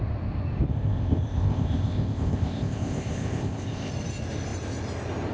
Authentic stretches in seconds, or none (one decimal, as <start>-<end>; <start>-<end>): 0.0-0.7; 3.9-5.3